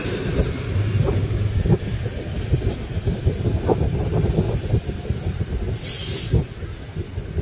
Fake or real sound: real